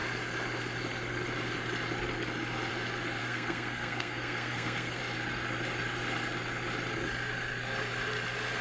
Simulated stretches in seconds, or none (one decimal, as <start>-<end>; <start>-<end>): 3.2-5.0